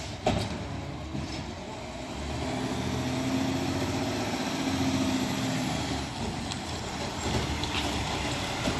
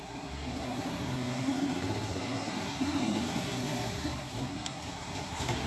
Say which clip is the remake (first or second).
second